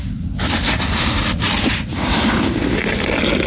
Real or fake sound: real